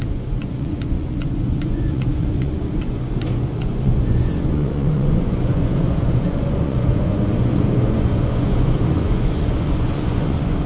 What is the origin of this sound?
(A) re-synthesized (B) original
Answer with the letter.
A